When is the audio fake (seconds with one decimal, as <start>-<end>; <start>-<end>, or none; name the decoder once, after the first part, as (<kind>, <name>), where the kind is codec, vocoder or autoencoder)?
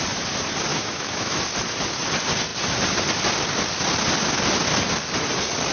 0.7-1.4 (autoencoder, DAC-VAE)